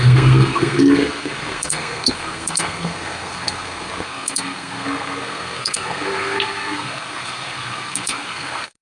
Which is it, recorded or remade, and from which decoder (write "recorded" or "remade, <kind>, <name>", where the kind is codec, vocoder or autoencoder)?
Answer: remade, codec, SNAC